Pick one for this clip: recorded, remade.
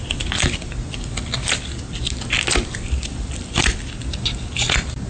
recorded